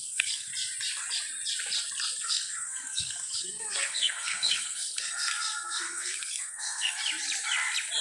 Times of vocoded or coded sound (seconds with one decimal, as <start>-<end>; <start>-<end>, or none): 0.0-0.5; 2.2-7.0